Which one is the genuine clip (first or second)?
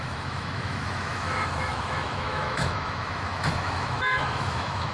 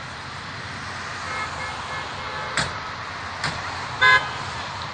second